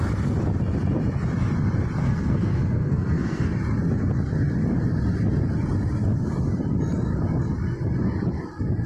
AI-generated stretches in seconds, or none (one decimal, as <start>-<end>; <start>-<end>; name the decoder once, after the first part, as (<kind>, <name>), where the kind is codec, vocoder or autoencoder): 2.0-3.5 (codec, SNAC)